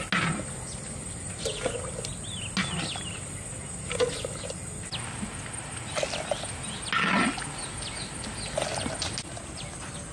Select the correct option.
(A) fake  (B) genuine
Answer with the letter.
B